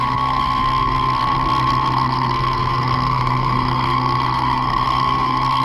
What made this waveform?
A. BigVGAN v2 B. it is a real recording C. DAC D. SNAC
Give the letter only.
D